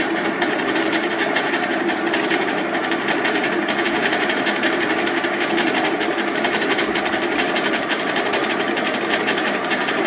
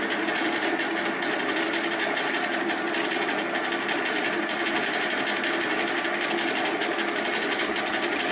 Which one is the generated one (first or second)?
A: first